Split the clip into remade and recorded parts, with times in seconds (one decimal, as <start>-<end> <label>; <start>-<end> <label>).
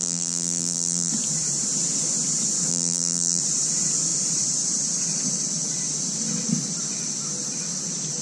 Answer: 0.0-1.1 remade; 1.1-2.7 recorded; 2.7-3.4 remade; 3.4-8.2 recorded